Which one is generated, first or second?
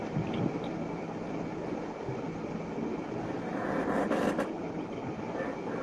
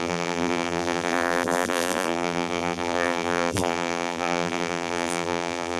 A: second